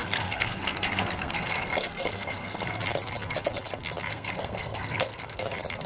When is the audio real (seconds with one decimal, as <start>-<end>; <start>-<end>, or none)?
2.8-4.1; 5.4-5.9